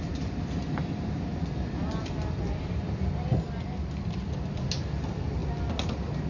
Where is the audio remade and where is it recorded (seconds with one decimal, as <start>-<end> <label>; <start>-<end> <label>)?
0.0-6.3 recorded